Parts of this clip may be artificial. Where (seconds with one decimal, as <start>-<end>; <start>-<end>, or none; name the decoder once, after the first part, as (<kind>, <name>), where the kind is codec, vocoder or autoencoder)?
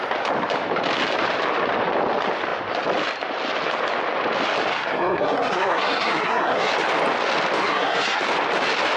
4.7-6.7 (codec, SNAC); 7.6-8.2